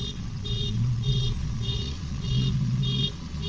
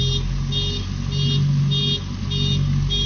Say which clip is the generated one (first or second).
first